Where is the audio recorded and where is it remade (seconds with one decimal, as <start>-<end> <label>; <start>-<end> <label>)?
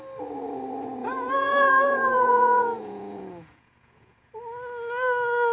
0.0-1.0 recorded; 1.0-4.3 remade; 4.3-5.5 recorded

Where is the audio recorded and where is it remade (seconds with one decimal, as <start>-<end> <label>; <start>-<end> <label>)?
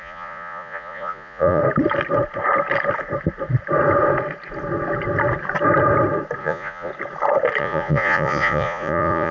0.0-1.6 remade; 1.6-6.4 recorded; 6.4-6.9 remade; 6.9-7.6 recorded; 7.6-9.3 remade